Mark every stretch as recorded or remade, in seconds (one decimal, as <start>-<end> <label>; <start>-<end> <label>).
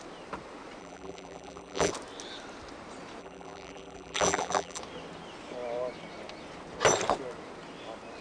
0.0-0.8 recorded; 0.8-1.9 remade; 1.9-3.2 recorded; 3.2-4.8 remade; 4.8-8.2 recorded